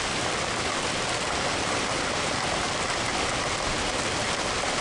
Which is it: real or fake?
real